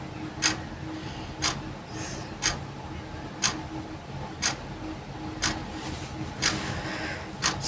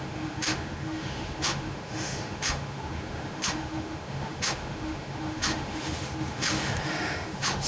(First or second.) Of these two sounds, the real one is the first